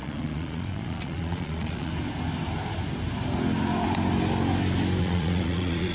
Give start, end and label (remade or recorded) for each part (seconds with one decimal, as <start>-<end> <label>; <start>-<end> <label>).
0.0-1.9 remade; 1.9-5.0 recorded; 5.0-5.9 remade